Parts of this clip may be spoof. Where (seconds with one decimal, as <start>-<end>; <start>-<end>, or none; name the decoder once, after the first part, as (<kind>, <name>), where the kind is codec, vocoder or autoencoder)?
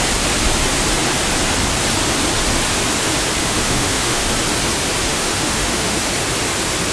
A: 3.4-4.3 (autoencoder, DAC-VAE); 5.0-6.1